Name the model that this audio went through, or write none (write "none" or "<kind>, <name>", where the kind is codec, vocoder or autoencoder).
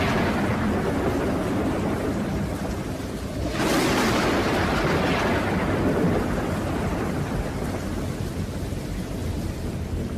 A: none